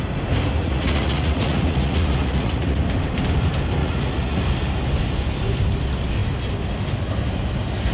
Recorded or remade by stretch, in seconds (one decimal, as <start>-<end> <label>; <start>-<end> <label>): 0.0-0.6 recorded; 0.6-2.8 remade; 2.8-3.8 recorded; 3.8-4.4 remade; 4.4-7.9 recorded